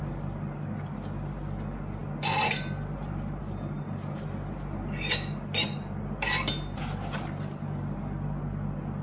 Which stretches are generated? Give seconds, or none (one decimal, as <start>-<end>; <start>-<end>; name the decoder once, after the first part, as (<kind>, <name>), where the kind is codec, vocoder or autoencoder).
none